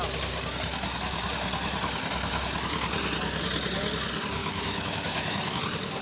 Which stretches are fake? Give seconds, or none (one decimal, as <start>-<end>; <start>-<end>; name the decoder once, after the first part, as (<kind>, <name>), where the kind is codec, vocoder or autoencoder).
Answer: 4.4-5.6 (autoencoder, DAC-VAE)